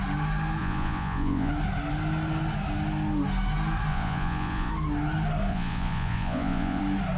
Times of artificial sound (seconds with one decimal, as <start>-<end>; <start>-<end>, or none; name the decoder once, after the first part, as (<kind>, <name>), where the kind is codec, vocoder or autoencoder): 0.6-1.5 (vocoder, Vocos); 3.9-4.7; 5.5-6.8